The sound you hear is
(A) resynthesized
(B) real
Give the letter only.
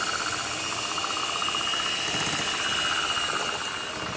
B